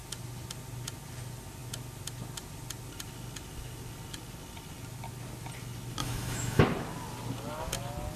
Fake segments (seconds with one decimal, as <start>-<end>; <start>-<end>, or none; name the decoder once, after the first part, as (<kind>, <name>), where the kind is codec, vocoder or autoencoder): 6.0-6.6 (autoencoder, DAC-VAE)